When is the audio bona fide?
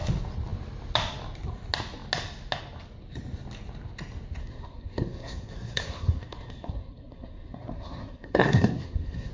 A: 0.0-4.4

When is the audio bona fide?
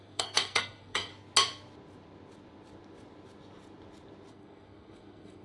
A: 1.1-4.3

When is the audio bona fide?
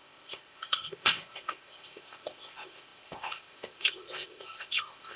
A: none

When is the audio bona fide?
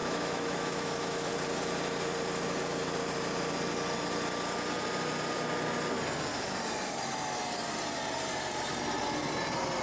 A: 1.3-9.8